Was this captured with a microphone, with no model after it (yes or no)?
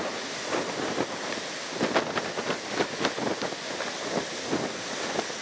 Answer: yes